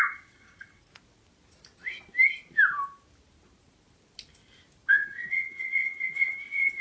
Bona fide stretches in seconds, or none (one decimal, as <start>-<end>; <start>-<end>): 0.8-4.9